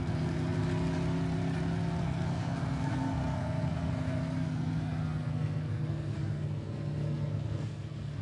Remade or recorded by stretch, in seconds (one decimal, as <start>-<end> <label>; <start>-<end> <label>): 0.0-0.6 remade; 0.6-2.0 recorded; 2.0-8.2 remade